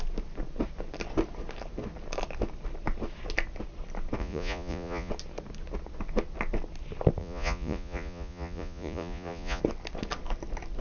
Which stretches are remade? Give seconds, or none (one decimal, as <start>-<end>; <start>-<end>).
4.2-5.1; 7.2-9.6